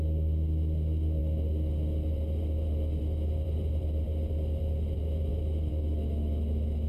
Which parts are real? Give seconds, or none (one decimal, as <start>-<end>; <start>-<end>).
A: 0.0-5.3